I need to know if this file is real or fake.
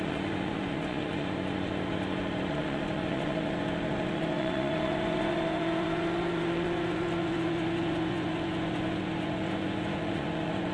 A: fake